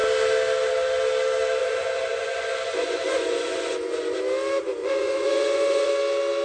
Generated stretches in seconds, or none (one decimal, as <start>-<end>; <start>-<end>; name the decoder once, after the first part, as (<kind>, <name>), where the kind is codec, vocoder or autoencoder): 1.6-4.2 (vocoder, Vocos); 4.8-5.9